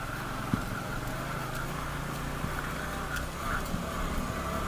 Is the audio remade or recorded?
recorded